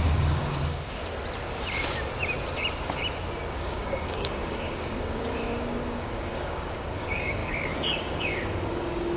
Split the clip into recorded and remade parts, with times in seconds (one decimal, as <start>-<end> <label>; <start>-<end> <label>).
0.0-1.0 remade; 1.0-3.6 recorded; 3.6-9.2 remade